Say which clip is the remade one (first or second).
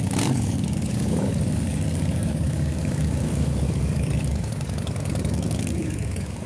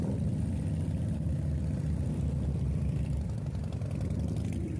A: first